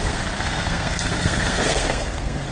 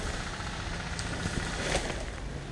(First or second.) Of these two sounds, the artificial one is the first